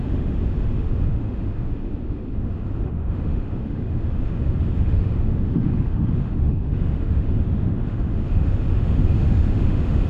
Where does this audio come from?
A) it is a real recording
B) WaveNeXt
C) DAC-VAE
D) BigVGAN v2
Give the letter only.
C